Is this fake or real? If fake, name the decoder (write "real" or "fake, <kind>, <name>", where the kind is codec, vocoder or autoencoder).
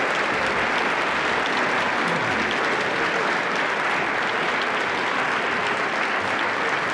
real